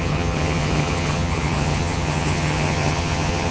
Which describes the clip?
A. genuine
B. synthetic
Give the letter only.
B